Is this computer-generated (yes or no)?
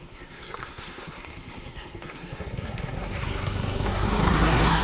yes